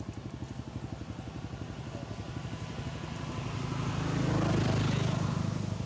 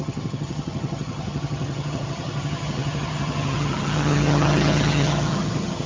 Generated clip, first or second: second